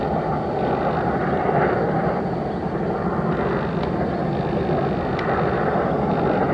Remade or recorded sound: recorded